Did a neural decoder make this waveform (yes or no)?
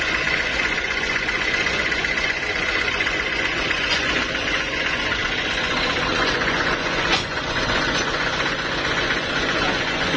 yes